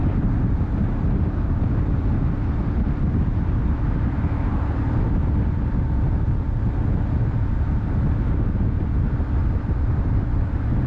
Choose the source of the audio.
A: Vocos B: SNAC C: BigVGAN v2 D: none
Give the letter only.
D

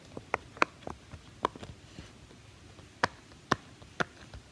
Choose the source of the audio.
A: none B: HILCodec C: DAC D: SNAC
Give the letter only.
A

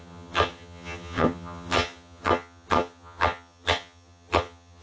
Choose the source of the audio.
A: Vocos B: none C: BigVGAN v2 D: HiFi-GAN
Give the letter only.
D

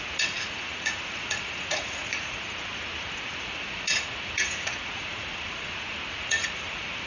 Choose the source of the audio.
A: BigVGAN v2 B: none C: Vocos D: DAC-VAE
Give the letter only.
C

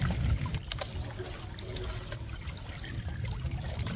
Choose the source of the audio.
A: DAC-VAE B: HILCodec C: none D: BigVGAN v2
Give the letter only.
C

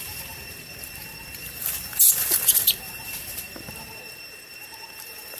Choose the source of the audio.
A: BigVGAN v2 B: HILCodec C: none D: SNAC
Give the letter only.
A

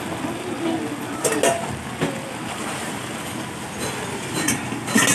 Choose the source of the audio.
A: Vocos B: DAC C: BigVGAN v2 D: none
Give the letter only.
D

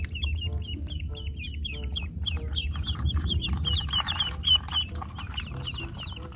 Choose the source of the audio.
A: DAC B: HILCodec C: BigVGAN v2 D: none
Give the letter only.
C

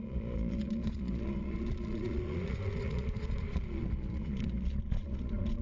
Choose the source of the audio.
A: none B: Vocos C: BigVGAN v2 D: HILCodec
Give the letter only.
B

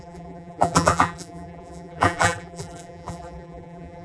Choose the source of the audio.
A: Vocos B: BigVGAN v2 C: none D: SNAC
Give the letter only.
B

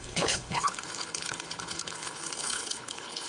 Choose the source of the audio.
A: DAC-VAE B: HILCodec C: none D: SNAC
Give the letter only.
B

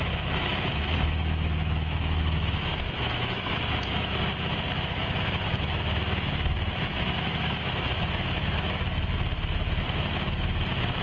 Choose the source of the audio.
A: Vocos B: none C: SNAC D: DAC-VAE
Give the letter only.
D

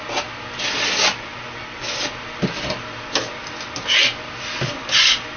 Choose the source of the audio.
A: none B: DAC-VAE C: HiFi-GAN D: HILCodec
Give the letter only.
A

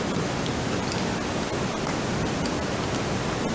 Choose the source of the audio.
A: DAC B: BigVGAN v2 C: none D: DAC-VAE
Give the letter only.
C